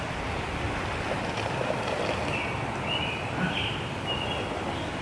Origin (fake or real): real